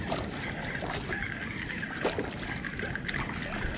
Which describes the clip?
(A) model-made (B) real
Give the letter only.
B